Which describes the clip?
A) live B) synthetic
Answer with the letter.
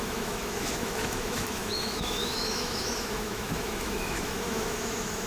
B